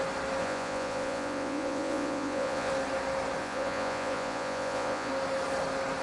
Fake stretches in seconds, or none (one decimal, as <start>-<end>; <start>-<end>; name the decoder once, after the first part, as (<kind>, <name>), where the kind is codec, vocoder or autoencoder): 0.4-2.7 (vocoder, Vocos); 3.4-5.1